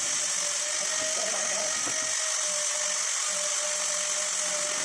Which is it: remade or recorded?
recorded